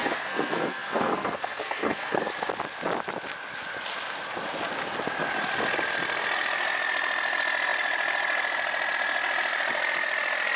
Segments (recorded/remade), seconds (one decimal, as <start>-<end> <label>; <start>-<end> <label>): 0.0-2.2 remade; 2.2-10.6 recorded